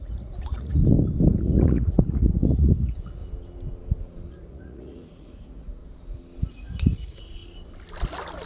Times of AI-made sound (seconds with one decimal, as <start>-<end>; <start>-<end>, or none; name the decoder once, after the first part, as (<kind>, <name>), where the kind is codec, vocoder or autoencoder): 0.0-0.8 (vocoder, Vocos); 1.4-3.2; 4.3-5.8; 6.5-7.4